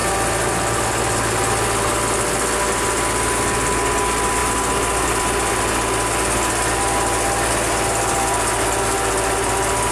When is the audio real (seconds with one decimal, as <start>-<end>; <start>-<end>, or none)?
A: 0.0-9.9